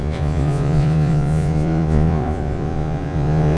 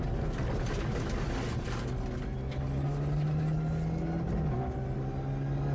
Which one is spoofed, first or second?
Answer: first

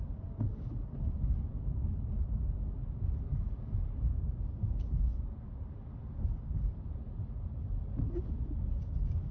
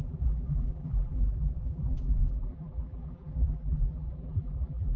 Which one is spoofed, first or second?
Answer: second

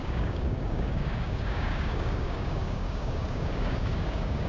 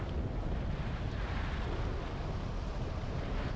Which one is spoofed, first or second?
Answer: first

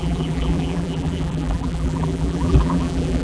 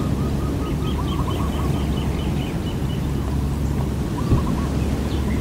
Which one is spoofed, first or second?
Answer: first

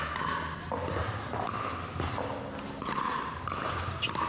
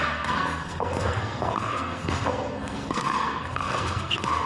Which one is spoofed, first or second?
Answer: second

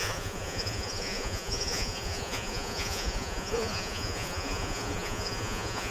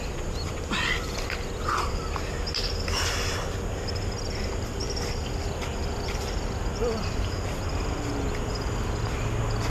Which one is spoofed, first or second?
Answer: first